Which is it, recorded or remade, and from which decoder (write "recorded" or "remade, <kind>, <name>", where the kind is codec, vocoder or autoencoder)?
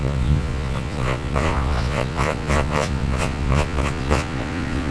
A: remade, vocoder, Vocos